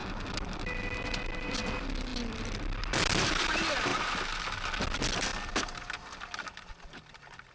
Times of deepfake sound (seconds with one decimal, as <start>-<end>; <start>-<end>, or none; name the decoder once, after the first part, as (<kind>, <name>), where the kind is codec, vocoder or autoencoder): 1.1-2.1 (vocoder, BigVGAN v2); 2.9-3.9; 4.8-5.3; 6.7-7.5